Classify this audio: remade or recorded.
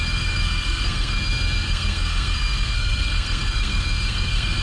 remade